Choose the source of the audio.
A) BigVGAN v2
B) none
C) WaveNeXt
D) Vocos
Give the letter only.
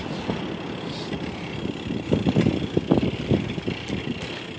B